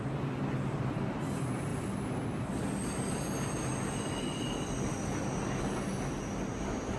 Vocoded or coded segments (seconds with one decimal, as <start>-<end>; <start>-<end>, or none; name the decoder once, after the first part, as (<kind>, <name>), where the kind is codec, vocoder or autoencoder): none